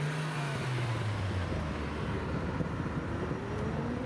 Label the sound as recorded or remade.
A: recorded